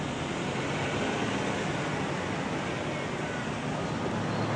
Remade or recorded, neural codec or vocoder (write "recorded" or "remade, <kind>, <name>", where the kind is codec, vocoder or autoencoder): recorded